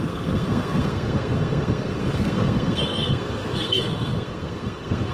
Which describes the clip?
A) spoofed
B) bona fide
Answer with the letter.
A